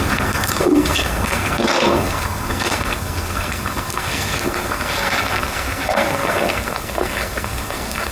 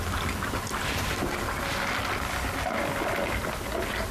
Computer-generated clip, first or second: first